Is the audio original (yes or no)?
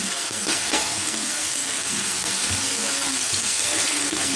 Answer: no